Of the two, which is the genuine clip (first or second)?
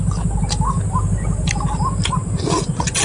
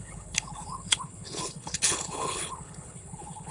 first